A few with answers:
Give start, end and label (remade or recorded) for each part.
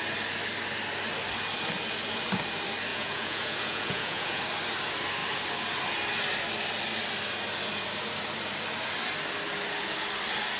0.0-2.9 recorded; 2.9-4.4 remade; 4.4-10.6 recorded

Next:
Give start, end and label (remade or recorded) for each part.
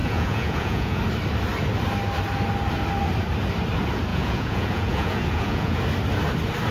0.0-1.0 remade; 1.0-4.1 recorded; 4.1-5.8 remade; 5.8-6.7 recorded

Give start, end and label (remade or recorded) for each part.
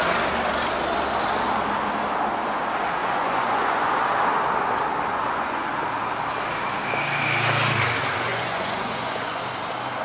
0.0-3.0 recorded; 3.0-4.0 remade; 4.0-5.1 recorded; 5.1-5.7 remade; 5.7-8.3 recorded; 8.3-9.4 remade; 9.4-10.0 recorded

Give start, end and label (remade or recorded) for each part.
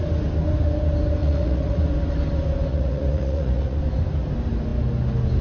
0.0-1.2 recorded; 1.2-1.8 remade; 1.8-2.7 recorded; 2.7-3.8 remade; 3.8-5.4 recorded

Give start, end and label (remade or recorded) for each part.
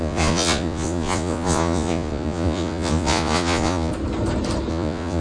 0.0-3.9 remade; 3.9-4.7 recorded; 4.7-5.2 remade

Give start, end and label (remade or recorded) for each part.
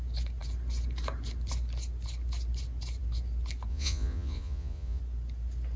0.0-3.7 recorded; 3.7-5.0 remade; 5.0-5.8 recorded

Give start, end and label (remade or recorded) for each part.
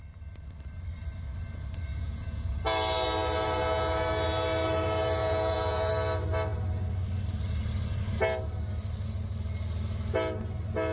0.0-1.9 recorded; 1.9-2.6 remade; 2.6-5.2 recorded; 5.2-5.9 remade; 5.9-10.9 recorded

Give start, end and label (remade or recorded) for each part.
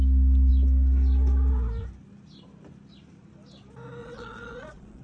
0.0-4.0 recorded; 4.0-5.0 remade